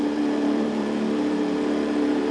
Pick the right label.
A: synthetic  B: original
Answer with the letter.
A